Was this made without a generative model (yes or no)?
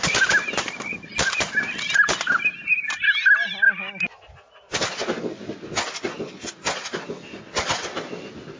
yes